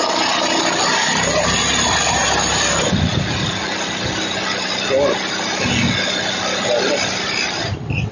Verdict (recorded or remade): recorded